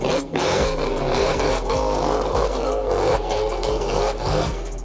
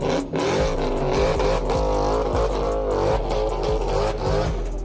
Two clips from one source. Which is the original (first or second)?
second